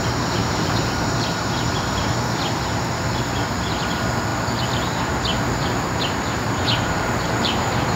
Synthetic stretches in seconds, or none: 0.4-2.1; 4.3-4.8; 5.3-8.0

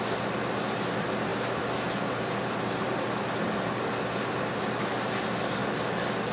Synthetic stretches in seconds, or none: none

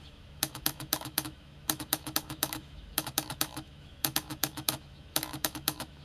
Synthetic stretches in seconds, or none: 0.0-6.0

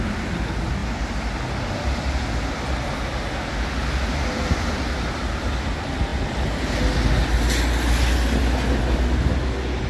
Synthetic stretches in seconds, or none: none

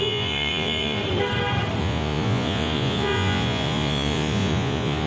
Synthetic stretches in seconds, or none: 0.0-1.0; 1.8-5.1